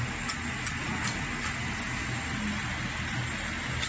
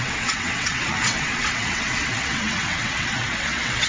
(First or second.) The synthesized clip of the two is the second